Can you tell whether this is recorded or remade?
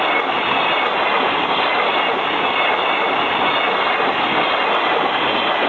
recorded